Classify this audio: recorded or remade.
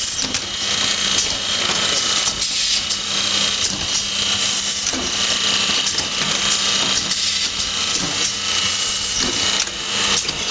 recorded